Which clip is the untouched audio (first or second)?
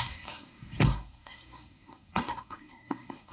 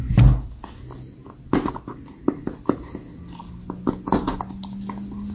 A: second